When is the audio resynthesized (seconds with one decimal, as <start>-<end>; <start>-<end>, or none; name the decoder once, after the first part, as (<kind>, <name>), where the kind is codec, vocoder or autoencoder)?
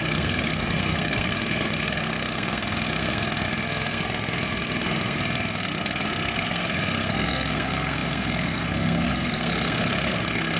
0.0-10.6 (codec, SNAC)